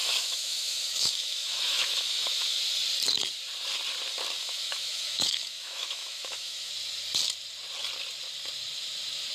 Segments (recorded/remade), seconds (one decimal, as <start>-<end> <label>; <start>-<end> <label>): 0.0-2.6 remade; 2.6-4.4 recorded; 4.4-6.7 remade; 6.7-9.3 recorded